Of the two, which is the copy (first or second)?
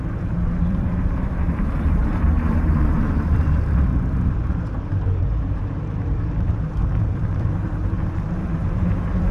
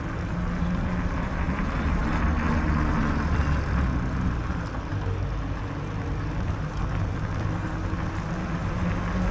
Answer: first